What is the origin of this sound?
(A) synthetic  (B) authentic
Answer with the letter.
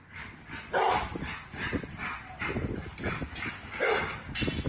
B